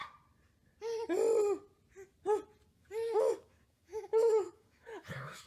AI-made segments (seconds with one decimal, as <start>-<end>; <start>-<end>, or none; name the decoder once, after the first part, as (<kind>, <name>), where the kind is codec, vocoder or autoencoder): 2.7-5.5 (autoencoder, DAC-VAE)